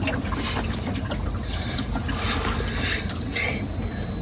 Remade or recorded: recorded